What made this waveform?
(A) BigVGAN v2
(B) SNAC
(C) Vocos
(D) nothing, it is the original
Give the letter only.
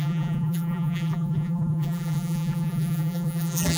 A